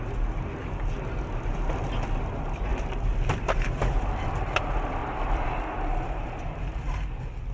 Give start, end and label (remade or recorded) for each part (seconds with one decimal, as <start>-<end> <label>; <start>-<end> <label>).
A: 0.0-2.7 recorded; 2.7-4.6 remade; 4.6-5.0 recorded; 5.0-6.6 remade; 6.6-7.5 recorded